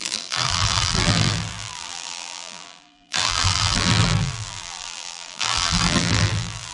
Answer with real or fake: fake